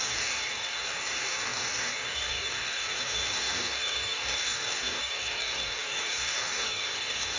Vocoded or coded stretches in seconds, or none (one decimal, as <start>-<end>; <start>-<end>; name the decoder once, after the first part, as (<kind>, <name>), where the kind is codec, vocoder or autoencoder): 0.0-7.4 (codec, DAC)